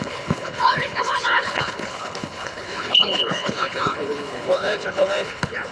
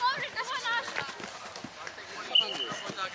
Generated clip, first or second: first